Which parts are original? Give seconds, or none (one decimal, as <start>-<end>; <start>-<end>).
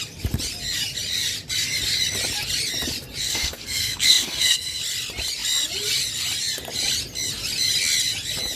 0.0-3.2; 4.8-8.6